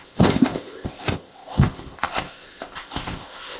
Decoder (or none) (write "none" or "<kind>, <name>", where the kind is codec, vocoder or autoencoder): codec, ZipCodec